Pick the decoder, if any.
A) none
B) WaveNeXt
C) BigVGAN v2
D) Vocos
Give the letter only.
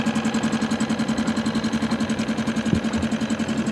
A